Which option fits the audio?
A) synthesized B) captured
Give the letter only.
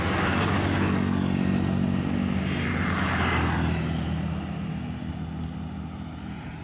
B